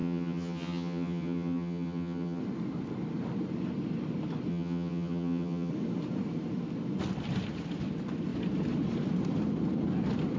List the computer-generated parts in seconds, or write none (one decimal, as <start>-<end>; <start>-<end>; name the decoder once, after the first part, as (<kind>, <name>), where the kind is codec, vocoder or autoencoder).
0.0-2.4 (vocoder, HiFi-GAN); 4.5-5.7